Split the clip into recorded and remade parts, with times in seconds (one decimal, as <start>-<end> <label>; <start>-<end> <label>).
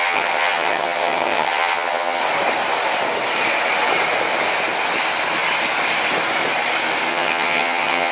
0.0-2.2 remade; 2.2-7.1 recorded; 7.1-8.1 remade